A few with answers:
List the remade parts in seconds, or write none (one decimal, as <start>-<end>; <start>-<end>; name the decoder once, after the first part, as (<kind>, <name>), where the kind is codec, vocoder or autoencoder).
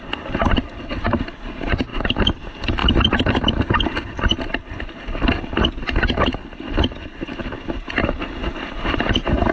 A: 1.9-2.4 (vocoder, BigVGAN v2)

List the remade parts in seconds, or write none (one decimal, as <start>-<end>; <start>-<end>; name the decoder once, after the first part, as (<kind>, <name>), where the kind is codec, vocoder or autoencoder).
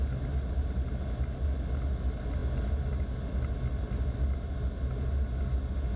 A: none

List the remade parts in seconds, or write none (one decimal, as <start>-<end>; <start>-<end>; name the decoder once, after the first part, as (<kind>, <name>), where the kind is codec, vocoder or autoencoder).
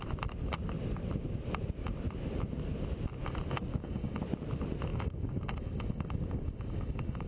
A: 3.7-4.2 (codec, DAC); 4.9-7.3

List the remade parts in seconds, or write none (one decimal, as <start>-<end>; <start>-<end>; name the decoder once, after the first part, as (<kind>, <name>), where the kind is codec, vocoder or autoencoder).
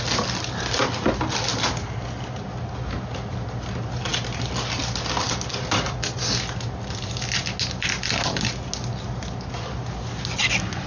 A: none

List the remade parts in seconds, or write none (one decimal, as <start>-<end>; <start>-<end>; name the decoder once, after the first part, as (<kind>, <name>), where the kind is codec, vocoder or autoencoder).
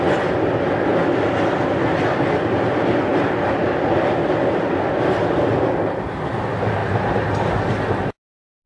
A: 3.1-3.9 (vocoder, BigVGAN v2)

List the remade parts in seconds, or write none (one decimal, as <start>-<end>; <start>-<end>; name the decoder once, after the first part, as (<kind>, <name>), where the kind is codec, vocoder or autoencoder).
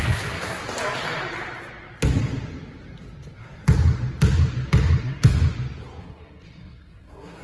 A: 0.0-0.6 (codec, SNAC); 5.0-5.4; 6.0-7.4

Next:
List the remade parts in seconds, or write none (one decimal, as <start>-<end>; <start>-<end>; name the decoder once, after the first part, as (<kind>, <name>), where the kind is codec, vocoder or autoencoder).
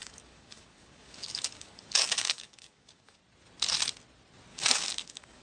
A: 0.0-3.2 (codec, DAC); 4.5-5.4